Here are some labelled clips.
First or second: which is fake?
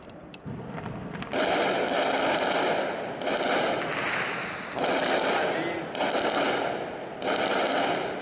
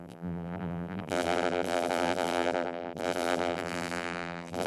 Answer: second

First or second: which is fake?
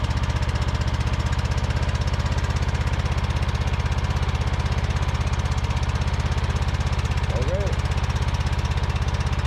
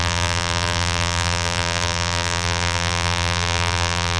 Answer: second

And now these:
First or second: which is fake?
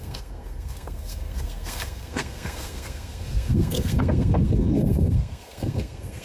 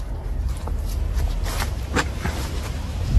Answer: first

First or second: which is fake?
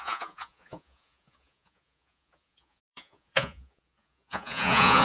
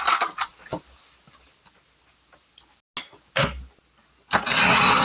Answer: first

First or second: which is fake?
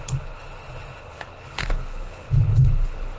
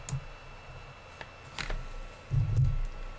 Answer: first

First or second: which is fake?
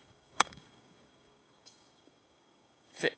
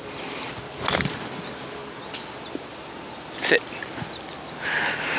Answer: first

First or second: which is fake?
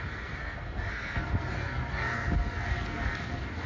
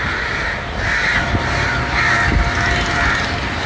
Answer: first